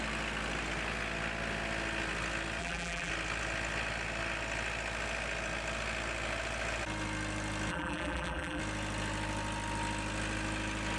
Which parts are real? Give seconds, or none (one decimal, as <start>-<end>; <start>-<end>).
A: 0.0-2.6; 3.1-7.7; 8.6-11.0